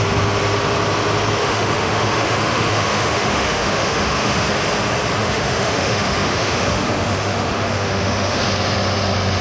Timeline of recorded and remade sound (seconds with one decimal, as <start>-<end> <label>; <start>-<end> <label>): 0.0-1.4 recorded; 1.4-4.5 remade; 4.5-5.2 recorded; 5.2-8.4 remade; 8.4-9.4 recorded